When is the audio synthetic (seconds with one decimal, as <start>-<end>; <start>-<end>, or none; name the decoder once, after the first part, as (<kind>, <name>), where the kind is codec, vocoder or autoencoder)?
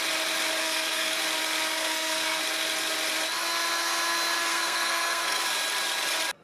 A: 0.6-1.1 (codec, SNAC); 1.7-2.4; 4.5-5.4